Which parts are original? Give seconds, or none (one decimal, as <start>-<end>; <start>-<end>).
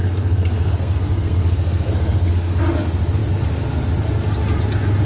2.6-5.0